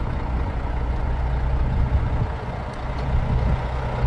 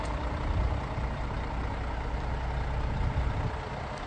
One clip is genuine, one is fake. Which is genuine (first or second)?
second